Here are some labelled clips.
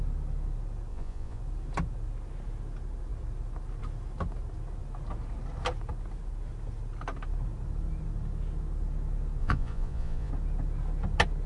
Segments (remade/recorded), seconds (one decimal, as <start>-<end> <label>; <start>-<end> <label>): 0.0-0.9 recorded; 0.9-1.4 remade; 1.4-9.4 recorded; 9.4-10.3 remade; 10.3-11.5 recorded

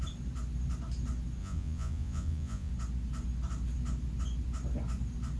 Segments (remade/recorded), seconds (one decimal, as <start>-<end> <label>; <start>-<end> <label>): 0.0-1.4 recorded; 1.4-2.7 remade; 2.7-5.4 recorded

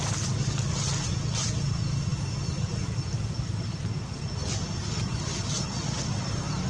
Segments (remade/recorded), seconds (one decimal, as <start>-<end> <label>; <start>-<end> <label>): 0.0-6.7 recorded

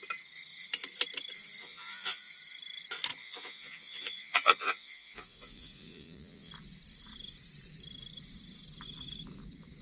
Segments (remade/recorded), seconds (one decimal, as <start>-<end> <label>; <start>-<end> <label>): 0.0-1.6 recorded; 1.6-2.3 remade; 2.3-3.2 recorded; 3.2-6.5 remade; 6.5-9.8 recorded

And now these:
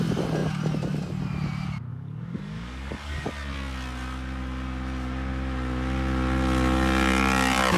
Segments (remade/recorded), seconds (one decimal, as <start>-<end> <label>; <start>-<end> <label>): 0.0-1.9 recorded; 1.9-3.3 remade; 3.3-7.8 recorded

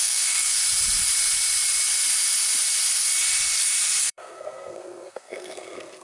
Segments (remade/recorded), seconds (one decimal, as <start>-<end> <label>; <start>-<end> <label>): 0.0-0.6 remade; 0.6-4.0 recorded; 4.0-6.0 remade

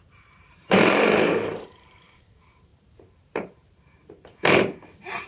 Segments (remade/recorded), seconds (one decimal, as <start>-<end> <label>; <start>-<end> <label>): 0.0-5.3 remade